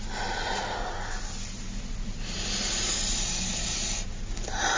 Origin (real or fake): real